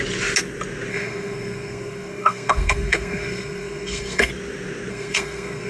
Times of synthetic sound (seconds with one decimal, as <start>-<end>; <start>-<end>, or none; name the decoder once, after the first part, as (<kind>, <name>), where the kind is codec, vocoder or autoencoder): 0.9-4.3 (codec, SNAC); 4.9-5.7